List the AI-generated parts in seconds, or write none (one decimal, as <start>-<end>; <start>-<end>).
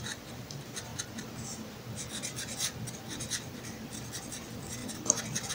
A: 0.0-0.9; 4.2-4.8